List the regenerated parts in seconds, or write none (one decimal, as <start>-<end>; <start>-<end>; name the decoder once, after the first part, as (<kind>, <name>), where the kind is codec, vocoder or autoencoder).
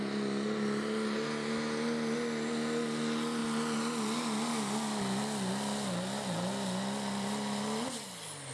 none